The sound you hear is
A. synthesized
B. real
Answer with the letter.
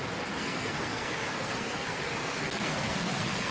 A